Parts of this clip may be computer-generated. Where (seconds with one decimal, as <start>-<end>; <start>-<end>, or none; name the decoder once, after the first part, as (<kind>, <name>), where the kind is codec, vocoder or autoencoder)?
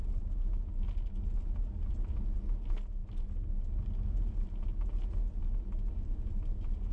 none